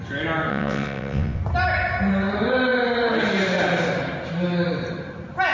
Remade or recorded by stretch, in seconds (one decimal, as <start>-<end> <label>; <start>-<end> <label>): 0.0-0.5 recorded; 0.5-1.4 remade; 1.4-5.5 recorded